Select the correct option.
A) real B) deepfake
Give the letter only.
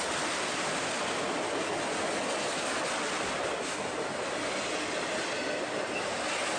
A